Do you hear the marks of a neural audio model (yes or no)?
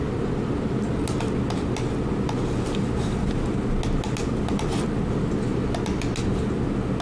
no